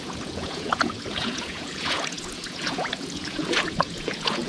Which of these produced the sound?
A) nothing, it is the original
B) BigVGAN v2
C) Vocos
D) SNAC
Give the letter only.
C